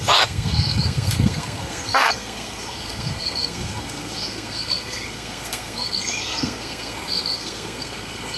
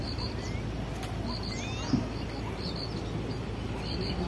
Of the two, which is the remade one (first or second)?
first